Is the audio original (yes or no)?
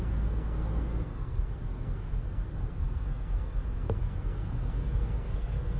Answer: no